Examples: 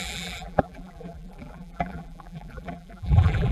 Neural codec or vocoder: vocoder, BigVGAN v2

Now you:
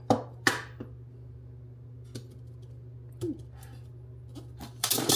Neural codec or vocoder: none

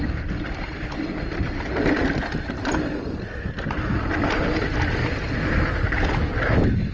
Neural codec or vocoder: none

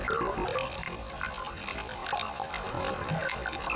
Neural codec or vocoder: none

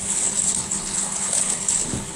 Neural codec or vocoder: codec, HILCodec